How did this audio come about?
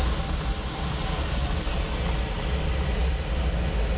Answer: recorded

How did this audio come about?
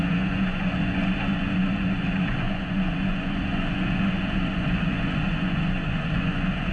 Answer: remade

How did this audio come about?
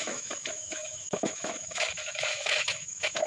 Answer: remade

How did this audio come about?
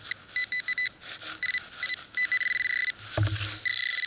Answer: recorded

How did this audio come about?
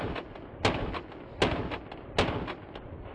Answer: recorded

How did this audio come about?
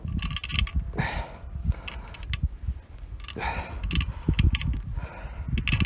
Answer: recorded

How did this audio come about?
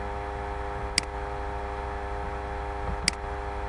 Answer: recorded